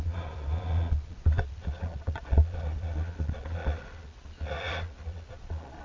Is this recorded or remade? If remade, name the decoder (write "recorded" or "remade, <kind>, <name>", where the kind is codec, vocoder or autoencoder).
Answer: remade, vocoder, Vocos